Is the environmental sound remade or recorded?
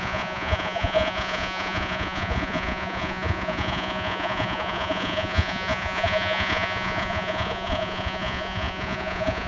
remade